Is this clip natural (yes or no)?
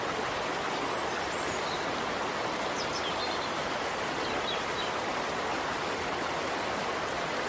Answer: yes